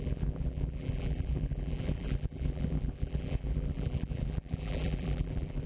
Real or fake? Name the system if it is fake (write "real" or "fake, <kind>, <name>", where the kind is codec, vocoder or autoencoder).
fake, vocoder, BigVGAN v2